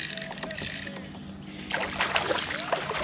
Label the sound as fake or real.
real